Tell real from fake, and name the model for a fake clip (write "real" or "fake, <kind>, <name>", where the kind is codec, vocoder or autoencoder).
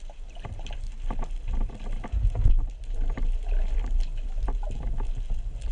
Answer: real